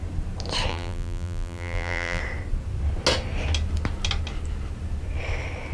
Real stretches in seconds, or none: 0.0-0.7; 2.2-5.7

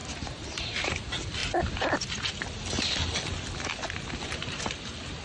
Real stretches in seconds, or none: 0.6-5.2

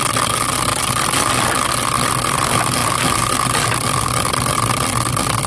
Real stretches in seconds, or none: 0.0-5.5

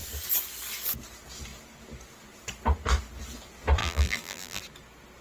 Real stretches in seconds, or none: 0.0-3.8; 4.6-5.2

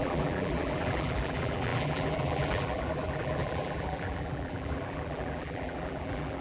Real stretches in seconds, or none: none

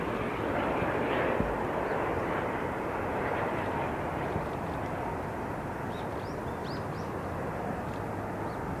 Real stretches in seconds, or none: 0.0-2.1; 3.4-8.8